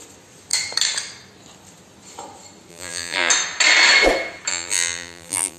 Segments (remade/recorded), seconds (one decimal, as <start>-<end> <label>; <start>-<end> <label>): 0.0-2.7 recorded; 2.7-3.3 remade; 3.3-4.5 recorded; 4.5-5.6 remade